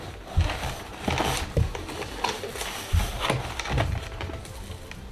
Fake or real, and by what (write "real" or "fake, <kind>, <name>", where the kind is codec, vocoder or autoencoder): real